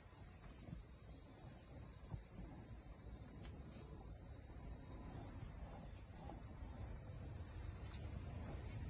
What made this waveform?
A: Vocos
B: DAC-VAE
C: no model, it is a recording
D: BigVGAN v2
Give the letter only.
D